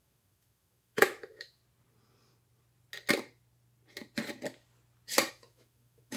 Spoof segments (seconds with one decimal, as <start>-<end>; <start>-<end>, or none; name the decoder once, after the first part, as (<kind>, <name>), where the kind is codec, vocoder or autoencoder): 0.0-1.6 (autoencoder, DAC-VAE); 5.3-6.2

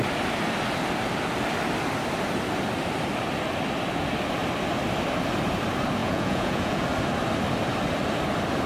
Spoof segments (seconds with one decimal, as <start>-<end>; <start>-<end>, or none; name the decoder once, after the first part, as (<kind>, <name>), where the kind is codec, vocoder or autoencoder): 6.0-6.8 (vocoder, Vocos)